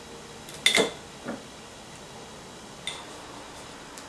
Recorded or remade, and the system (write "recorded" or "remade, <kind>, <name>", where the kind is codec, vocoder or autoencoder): recorded